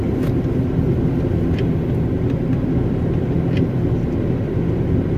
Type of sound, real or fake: real